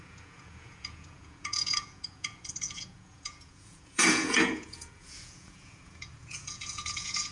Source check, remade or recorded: remade